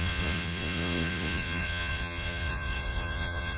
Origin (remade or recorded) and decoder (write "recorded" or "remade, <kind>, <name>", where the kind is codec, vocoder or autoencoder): remade, vocoder, Vocos